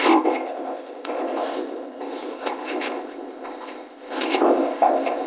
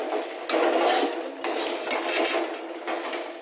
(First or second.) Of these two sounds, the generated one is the first